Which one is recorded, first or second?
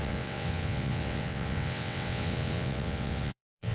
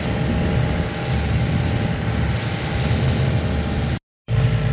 second